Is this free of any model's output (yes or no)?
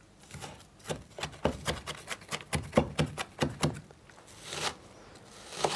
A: yes